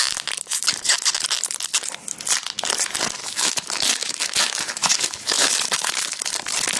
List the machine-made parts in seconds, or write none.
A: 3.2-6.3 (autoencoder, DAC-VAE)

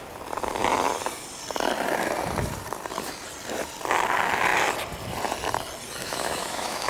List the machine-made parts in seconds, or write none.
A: 6.0-6.9 (autoencoder, DAC-VAE)

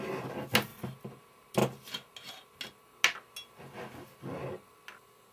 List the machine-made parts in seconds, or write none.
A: none

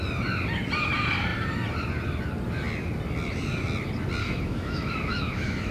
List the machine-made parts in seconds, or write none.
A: 4.2-5.7 (autoencoder, DAC-VAE)

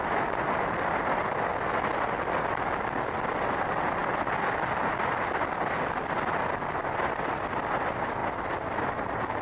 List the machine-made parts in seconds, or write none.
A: none

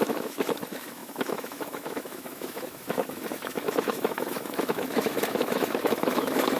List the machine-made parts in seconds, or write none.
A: 0.0-6.6 (autoencoder, DAC-VAE)